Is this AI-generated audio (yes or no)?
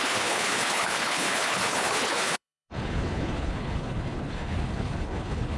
yes